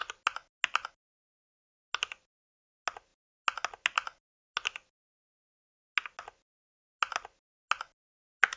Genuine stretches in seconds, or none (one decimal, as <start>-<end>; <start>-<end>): 0.0-8.6